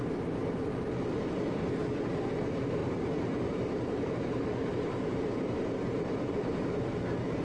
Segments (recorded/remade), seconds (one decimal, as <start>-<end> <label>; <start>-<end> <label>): 0.0-2.8 recorded; 2.8-7.4 remade

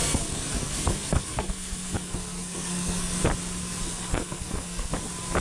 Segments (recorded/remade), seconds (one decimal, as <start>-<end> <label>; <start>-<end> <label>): 0.0-3.2 remade; 3.2-3.6 recorded; 3.6-4.9 remade; 4.9-5.4 recorded

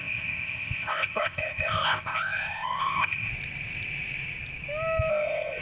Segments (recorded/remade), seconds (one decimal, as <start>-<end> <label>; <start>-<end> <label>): 0.0-3.3 remade; 3.3-5.1 recorded; 5.1-5.6 remade

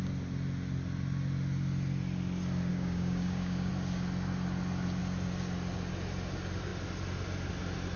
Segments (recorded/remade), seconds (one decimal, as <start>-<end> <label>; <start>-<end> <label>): 0.0-2.7 recorded; 2.7-3.7 remade; 3.7-8.0 recorded

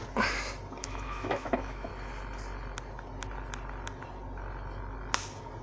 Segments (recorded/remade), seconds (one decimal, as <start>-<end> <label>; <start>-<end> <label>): 0.0-0.8 recorded; 0.8-1.9 remade; 1.9-5.6 recorded

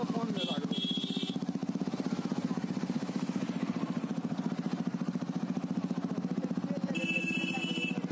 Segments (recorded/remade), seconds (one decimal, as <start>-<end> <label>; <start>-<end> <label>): 0.0-1.6 recorded; 1.6-4.5 remade; 4.5-8.1 recorded

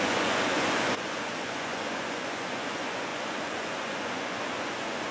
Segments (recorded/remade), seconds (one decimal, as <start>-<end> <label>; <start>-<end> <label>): 0.0-5.1 remade